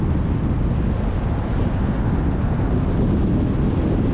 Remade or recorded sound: recorded